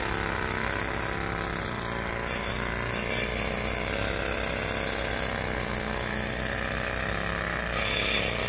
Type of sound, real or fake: real